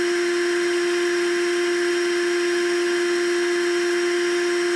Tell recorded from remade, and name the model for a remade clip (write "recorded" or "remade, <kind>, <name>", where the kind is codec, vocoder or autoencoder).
recorded